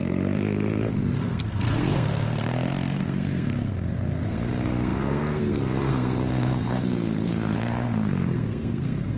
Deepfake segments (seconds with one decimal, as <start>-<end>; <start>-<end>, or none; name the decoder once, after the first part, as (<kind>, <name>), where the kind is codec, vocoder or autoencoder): 0.0-9.2 (codec, SNAC)